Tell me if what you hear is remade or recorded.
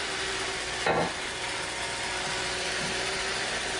remade